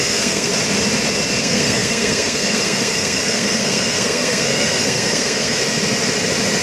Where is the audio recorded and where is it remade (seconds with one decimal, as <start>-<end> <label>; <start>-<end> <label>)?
0.0-0.5 remade; 0.5-1.4 recorded; 1.4-5.6 remade; 5.6-6.6 recorded